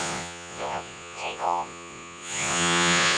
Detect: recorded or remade remade